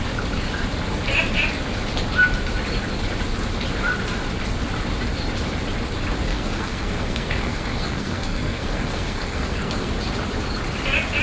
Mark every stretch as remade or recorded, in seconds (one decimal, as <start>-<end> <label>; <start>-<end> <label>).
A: 0.0-6.3 recorded; 6.3-9.9 remade; 9.9-11.2 recorded

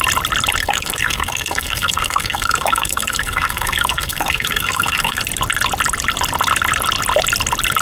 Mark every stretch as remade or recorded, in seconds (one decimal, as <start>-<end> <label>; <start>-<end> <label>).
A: 0.0-0.6 recorded; 0.6-5.2 remade; 5.2-7.8 recorded

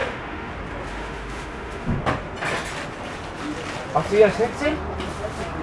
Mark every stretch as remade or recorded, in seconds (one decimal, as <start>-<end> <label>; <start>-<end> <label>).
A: 0.0-0.5 remade; 0.5-0.9 recorded; 0.9-2.0 remade; 2.0-5.6 recorded

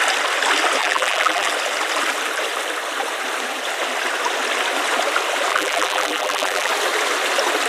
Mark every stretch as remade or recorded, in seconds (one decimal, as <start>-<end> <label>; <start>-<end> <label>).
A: 0.0-0.8 recorded; 0.8-1.5 remade; 1.5-5.5 recorded; 5.5-6.7 remade; 6.7-7.7 recorded

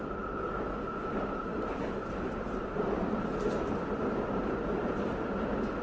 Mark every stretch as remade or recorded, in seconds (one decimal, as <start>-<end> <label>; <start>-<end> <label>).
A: 0.0-1.5 recorded; 1.5-5.0 remade; 5.0-5.8 recorded

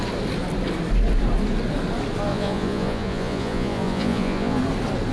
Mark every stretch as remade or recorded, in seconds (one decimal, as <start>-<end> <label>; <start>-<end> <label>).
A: 0.0-2.3 recorded; 2.3-4.6 remade; 4.6-5.1 recorded